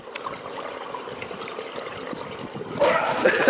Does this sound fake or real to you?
real